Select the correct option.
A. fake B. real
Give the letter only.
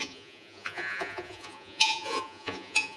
A